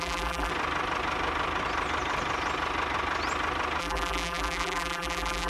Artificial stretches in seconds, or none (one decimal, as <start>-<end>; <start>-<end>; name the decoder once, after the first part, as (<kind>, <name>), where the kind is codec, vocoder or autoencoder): 0.0-0.5 (vocoder, BigVGAN v2); 3.8-5.5